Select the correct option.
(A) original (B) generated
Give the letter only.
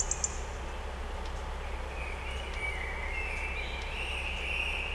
A